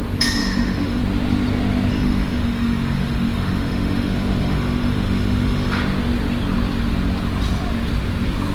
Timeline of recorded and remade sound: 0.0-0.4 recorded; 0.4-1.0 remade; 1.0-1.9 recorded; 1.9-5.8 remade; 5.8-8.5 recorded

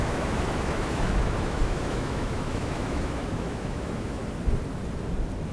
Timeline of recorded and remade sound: 0.0-4.2 remade; 4.2-5.5 recorded